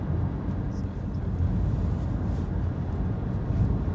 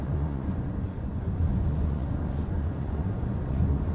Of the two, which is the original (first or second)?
first